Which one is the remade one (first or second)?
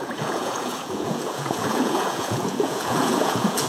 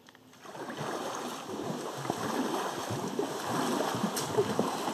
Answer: first